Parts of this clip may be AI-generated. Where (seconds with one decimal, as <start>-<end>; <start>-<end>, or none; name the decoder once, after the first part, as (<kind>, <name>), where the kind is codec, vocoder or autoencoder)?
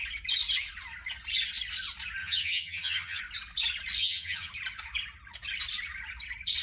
2.2-3.2 (vocoder, HiFi-GAN); 4.0-4.5